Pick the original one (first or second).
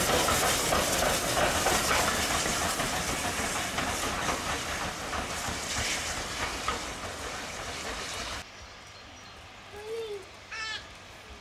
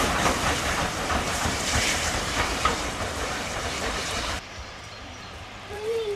first